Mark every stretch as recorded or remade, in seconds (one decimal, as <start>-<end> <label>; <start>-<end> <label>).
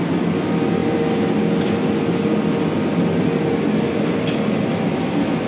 0.0-5.5 recorded